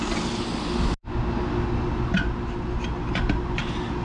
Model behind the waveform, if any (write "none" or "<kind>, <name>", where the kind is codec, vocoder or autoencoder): none